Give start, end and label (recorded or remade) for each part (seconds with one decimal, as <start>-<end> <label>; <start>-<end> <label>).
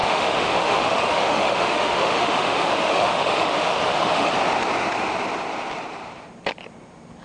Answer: 0.0-4.3 remade; 4.3-7.2 recorded